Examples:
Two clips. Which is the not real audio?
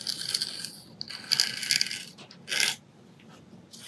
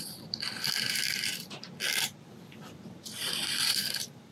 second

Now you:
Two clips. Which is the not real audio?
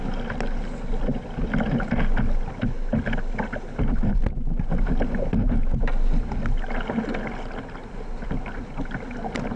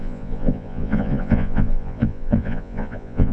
second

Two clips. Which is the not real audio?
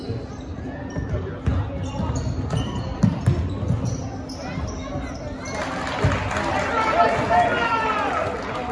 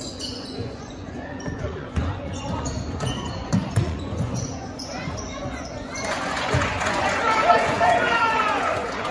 second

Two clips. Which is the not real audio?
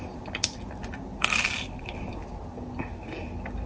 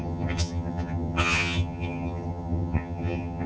second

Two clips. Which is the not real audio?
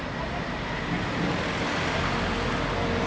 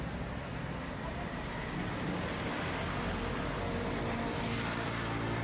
second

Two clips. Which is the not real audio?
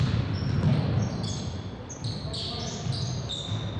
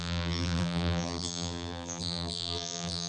second